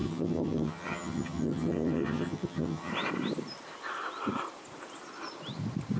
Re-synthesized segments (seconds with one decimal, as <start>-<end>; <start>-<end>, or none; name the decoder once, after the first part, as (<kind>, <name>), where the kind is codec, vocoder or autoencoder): 0.0-2.9 (vocoder, HiFi-GAN)